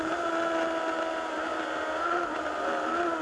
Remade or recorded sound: recorded